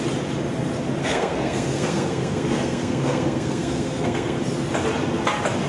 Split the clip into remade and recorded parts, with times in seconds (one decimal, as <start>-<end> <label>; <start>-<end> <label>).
0.0-1.0 recorded; 1.0-4.4 remade; 4.4-5.7 recorded